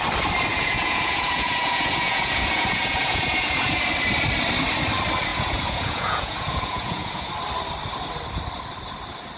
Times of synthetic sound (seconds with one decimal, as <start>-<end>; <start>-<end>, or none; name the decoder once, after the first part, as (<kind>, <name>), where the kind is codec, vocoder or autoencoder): 0.5-3.8 (vocoder, Vocos); 5.3-7.3